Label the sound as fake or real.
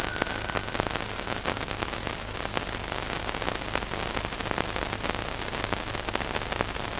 real